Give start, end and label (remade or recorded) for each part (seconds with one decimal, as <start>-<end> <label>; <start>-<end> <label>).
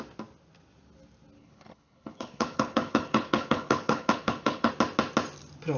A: 0.0-1.4 recorded; 1.4-4.7 remade; 4.7-5.8 recorded